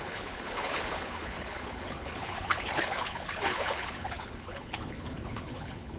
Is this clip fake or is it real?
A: fake